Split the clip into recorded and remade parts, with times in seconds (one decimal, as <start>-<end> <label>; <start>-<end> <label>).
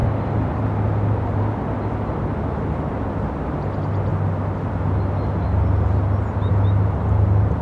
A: 0.0-7.6 recorded